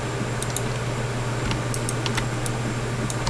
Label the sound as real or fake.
real